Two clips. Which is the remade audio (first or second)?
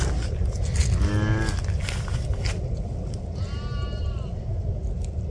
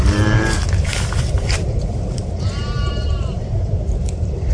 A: second